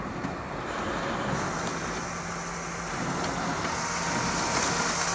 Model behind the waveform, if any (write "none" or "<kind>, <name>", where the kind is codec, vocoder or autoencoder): none